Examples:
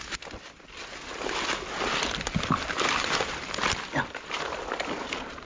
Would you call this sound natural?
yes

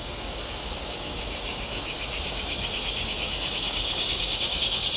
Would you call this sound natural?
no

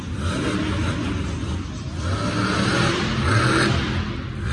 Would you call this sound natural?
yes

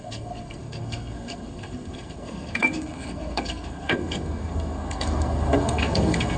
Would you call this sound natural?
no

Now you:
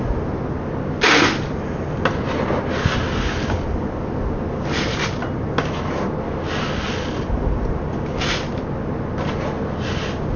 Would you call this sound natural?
yes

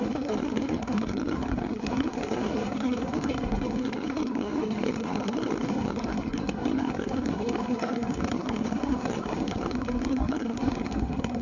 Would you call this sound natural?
no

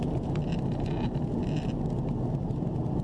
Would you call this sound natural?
yes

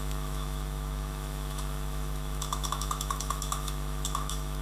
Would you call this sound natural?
no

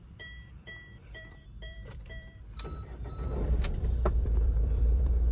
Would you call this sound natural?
no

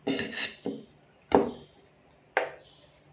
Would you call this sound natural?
yes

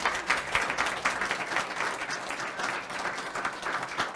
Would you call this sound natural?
yes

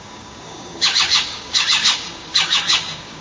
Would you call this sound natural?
no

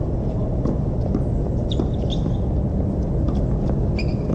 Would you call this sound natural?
yes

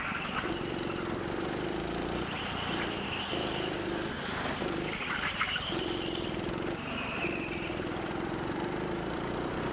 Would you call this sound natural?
no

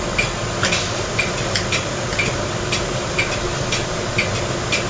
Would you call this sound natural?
yes